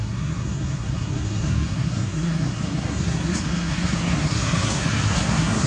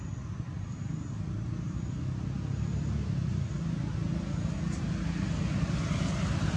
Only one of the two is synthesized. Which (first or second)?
first